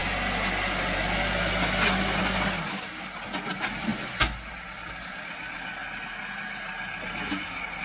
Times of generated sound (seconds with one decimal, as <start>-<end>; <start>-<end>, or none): none